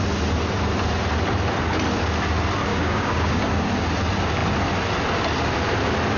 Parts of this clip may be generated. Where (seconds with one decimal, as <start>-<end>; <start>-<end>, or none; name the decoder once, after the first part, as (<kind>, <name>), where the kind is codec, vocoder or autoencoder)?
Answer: 2.7-3.4 (codec, DAC)